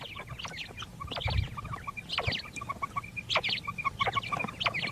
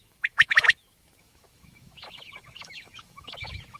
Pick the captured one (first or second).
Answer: first